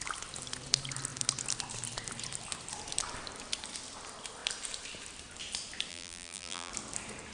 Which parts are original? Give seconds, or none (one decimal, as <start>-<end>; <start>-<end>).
0.0-5.9; 6.7-7.3